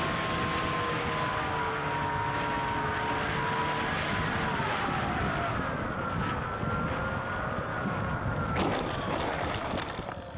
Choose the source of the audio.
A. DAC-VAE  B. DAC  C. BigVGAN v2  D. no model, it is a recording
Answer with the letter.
D